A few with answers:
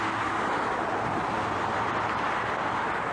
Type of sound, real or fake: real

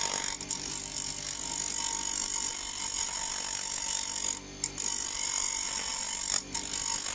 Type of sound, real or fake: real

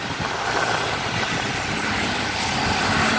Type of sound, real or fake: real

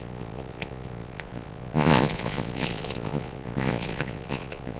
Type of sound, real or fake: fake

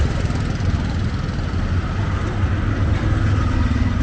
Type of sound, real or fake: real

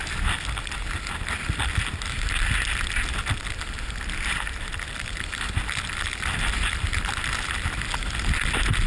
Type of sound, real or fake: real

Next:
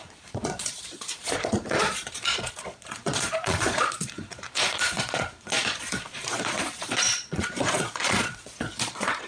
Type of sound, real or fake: fake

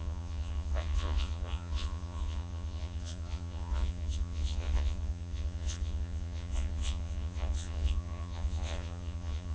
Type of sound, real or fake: fake